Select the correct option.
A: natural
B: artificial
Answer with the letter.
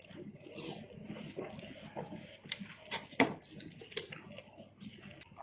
A